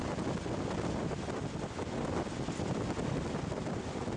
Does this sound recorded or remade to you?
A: recorded